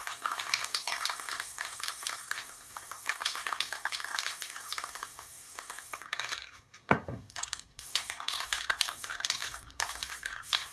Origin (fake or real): fake